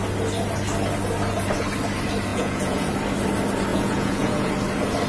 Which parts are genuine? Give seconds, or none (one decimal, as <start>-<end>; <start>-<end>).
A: 0.0-2.3; 2.9-3.7; 4.5-5.1